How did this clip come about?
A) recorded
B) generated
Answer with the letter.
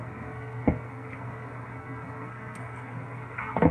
B